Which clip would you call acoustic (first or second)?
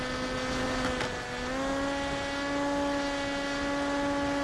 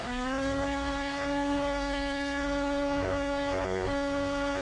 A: first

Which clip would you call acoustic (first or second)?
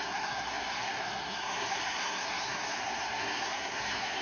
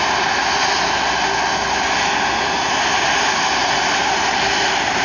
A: second